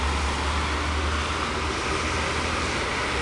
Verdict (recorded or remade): recorded